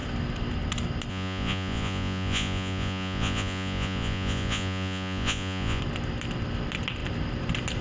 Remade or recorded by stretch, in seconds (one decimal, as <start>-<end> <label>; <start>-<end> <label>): 0.0-1.1 recorded; 1.1-5.8 remade; 5.8-7.8 recorded